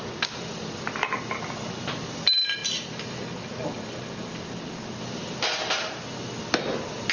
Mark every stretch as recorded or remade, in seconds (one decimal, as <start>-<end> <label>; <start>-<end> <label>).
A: 0.0-7.1 recorded